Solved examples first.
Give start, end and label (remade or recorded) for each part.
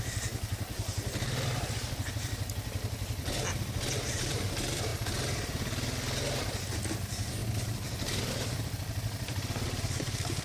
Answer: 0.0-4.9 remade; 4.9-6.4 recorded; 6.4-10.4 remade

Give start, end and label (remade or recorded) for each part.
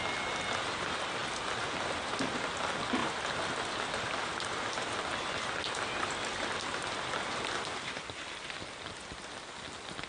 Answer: 0.0-10.1 recorded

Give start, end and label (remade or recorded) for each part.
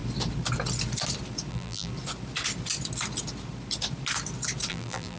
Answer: 0.0-1.5 recorded; 1.5-1.9 remade; 1.9-4.7 recorded; 4.7-5.2 remade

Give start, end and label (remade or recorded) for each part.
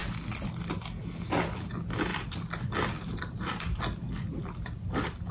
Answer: 0.0-2.1 recorded; 2.1-5.3 remade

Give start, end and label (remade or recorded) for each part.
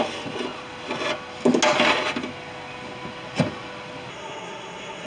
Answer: 0.0-4.1 recorded; 4.1-5.1 remade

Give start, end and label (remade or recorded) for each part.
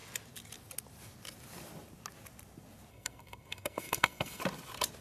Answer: 0.0-2.9 recorded; 2.9-4.4 remade; 4.4-5.0 recorded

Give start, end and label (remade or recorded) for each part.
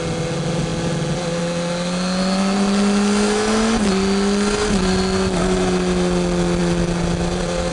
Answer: 0.0-7.7 recorded